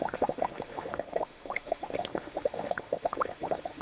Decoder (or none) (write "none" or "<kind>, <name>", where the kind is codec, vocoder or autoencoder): autoencoder, DAC-VAE